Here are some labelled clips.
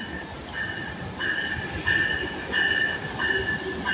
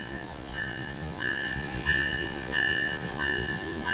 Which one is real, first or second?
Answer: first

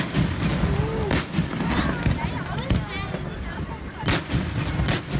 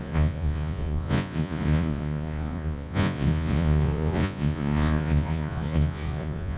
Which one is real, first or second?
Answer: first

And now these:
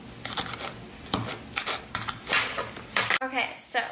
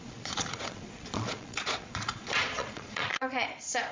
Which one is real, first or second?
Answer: first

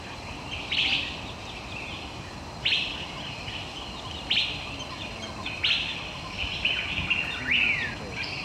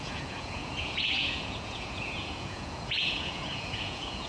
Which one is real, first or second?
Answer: first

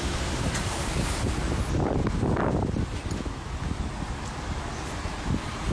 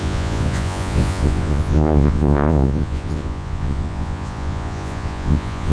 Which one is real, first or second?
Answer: first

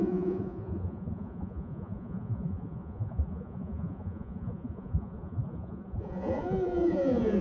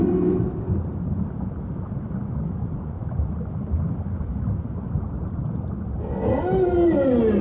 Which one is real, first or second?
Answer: second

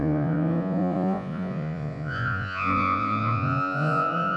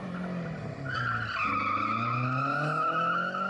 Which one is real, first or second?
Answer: second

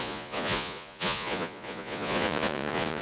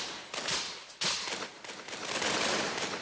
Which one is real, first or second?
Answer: second